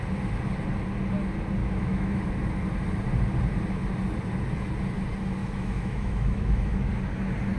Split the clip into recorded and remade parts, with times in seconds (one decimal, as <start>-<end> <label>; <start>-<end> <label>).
0.0-1.6 recorded; 1.6-2.2 remade; 2.2-5.4 recorded; 5.4-6.9 remade; 6.9-7.6 recorded